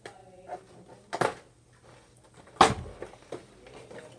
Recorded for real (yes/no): yes